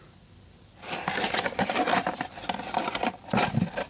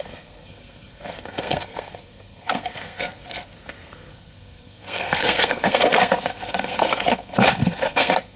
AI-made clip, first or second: second